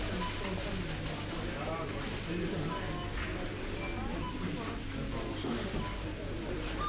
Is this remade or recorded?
recorded